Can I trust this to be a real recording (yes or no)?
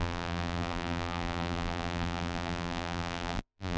no